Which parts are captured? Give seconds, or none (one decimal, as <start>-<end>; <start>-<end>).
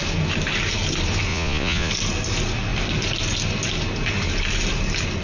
0.0-1.3; 1.9-5.2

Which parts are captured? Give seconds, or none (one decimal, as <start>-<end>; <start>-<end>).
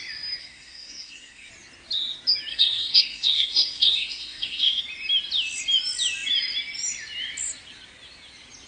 0.0-0.4; 1.5-2.5; 4.8-8.7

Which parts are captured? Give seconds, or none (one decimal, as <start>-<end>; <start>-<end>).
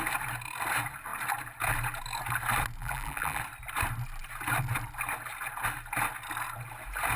0.0-2.8; 3.4-7.2